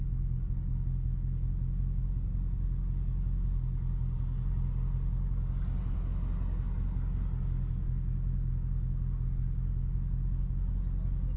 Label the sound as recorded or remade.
recorded